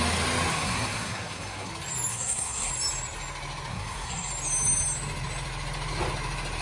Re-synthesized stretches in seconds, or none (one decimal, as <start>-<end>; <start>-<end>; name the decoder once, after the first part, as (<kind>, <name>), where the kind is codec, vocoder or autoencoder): 0.5-1.7 (codec, SNAC); 2.1-2.7; 3.7-4.3